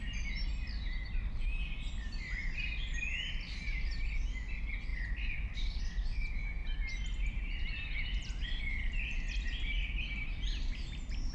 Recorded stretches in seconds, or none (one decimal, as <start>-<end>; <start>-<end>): 0.0-11.3